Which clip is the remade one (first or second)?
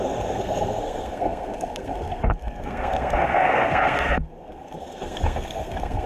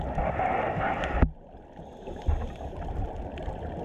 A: first